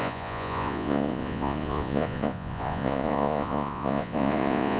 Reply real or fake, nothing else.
fake